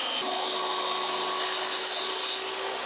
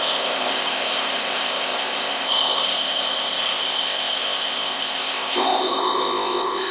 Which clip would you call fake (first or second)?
second